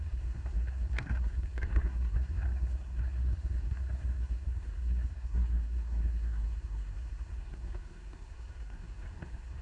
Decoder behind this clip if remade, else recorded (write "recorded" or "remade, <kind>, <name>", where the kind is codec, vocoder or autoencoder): remade, codec, SNAC